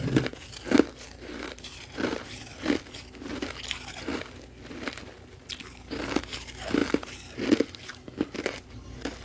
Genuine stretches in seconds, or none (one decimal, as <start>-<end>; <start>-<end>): 0.0-9.2